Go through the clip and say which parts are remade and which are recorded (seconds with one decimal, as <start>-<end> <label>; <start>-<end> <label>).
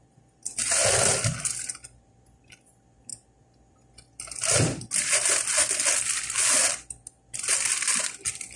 0.0-8.6 recorded